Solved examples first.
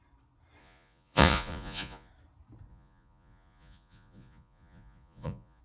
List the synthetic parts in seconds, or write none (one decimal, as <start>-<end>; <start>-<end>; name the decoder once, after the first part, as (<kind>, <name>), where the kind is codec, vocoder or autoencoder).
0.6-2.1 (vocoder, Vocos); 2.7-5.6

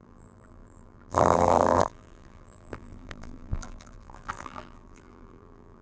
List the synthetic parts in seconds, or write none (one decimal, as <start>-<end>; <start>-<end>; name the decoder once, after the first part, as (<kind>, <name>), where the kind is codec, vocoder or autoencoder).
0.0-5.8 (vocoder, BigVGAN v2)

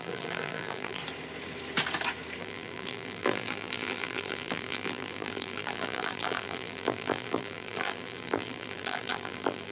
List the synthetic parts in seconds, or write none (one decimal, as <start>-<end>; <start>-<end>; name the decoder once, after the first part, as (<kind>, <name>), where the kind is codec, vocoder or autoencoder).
0.0-1.0 (vocoder, BigVGAN v2); 2.4-9.7

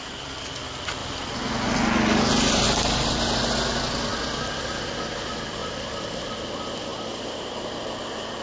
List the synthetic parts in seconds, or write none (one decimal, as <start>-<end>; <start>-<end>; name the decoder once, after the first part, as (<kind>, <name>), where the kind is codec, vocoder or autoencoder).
1.0-1.5 (vocoder, BigVGAN v2); 5.6-6.3; 6.9-7.5

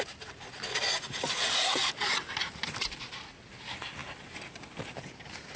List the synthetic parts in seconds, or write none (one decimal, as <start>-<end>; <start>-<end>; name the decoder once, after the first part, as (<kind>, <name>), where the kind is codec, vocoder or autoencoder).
none